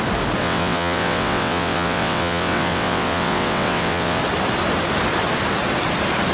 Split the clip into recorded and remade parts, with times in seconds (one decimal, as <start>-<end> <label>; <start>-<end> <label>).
0.0-0.4 recorded; 0.4-4.2 remade; 4.2-6.3 recorded